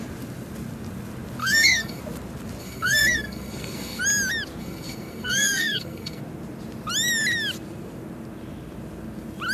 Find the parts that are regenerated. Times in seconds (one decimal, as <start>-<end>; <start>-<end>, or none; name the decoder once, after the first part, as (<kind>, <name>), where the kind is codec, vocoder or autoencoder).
1.4-2.0 (codec, SNAC); 2.6-4.0; 4.6-6.2